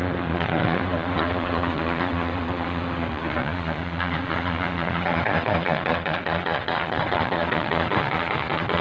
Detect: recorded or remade remade